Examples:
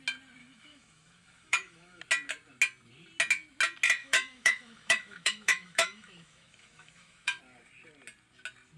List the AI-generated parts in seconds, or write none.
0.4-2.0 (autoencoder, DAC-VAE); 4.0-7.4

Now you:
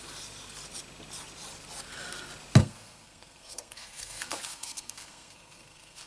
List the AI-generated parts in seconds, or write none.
2.6-6.1 (codec, SNAC)

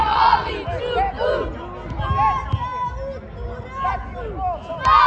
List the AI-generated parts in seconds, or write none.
0.0-0.5 (vocoder, WaveNeXt)

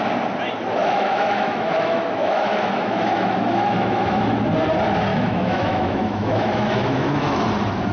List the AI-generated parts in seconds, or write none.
0.8-4.2 (autoencoder, DAC-VAE); 5.1-7.4

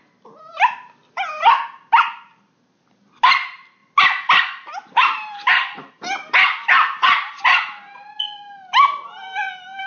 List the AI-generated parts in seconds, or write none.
4.7-5.9 (vocoder, BigVGAN v2)

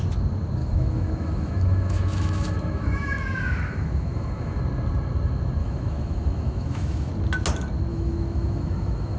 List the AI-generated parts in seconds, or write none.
0.6-4.6 (autoencoder, DAC-VAE); 5.6-7.1; 7.9-9.2

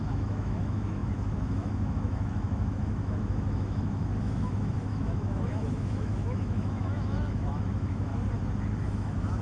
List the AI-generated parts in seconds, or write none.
0.0-8.1 (autoencoder, DAC-VAE); 8.9-9.4